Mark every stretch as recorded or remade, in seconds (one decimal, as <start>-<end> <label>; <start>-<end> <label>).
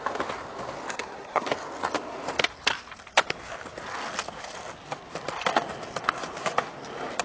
0.0-0.9 recorded; 0.9-1.5 remade; 1.5-7.2 recorded